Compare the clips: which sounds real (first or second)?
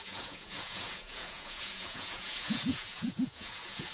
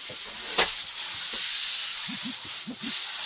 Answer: second